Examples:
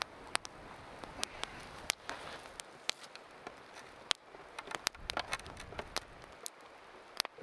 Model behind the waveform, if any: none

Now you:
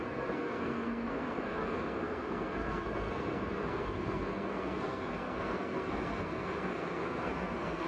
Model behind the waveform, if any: codec, SNAC